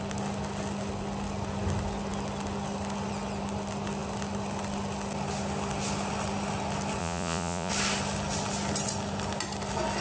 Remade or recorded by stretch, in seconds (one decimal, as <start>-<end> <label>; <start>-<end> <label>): 0.0-7.0 recorded; 7.0-7.7 remade; 7.7-10.0 recorded